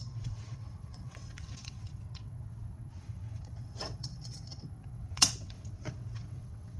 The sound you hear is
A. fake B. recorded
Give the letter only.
A